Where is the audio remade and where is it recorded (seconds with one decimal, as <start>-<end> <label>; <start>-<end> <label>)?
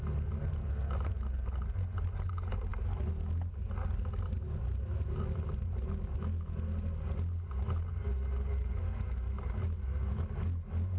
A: 0.0-11.0 recorded